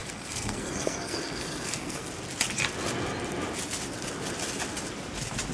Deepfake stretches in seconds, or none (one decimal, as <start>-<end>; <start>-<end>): 0.0-2.1